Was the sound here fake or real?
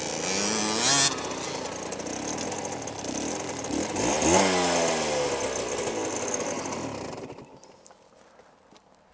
real